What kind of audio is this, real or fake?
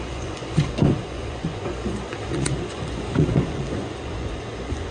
fake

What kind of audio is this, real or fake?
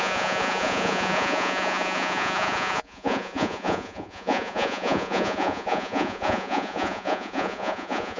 fake